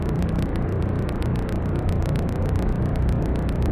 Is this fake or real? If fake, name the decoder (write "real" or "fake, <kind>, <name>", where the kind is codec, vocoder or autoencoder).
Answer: fake, vocoder, BigVGAN v2